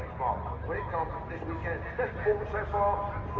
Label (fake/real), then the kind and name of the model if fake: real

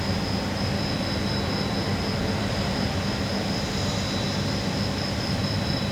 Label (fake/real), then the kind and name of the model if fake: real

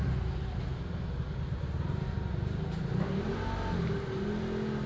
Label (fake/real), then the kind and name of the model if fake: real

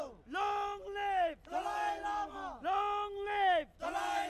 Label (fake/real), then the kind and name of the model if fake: real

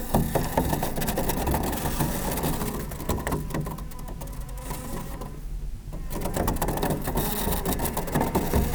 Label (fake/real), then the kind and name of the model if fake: real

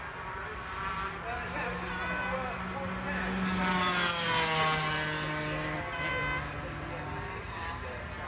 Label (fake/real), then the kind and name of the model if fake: real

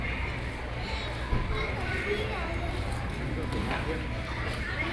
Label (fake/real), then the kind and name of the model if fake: real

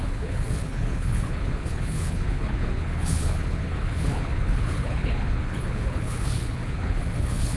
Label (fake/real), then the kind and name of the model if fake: fake, codec, HILCodec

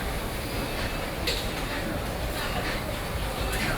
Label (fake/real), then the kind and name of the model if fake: real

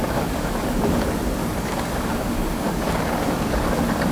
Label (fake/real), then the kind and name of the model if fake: fake, codec, DAC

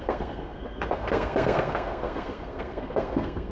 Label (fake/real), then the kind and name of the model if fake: fake, codec, SNAC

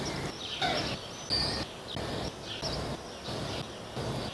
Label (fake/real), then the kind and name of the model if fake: real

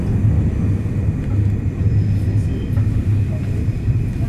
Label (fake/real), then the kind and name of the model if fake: real